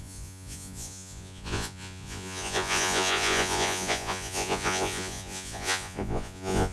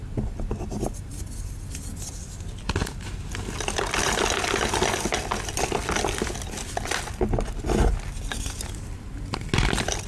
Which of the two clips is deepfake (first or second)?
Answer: first